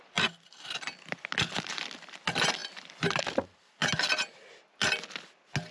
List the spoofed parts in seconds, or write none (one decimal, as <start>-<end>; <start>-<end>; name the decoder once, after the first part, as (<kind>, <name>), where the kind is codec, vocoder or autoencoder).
2.6-3.2 (vocoder, BigVGAN v2)